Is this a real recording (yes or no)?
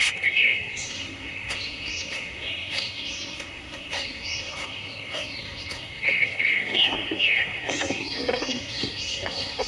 no